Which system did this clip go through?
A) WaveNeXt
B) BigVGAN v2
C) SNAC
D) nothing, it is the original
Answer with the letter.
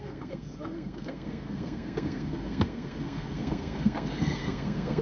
C